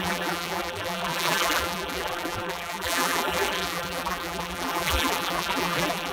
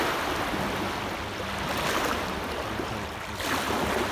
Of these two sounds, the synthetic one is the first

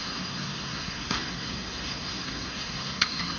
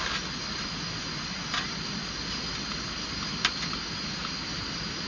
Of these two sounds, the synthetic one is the first